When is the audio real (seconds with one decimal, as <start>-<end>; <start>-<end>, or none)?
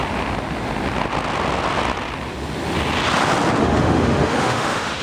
0.0-3.6